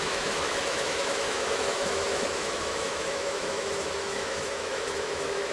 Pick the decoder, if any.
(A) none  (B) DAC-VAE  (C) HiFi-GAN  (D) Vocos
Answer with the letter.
B